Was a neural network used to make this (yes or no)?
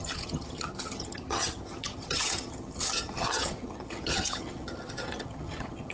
yes